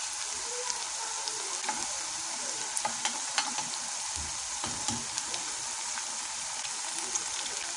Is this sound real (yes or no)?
no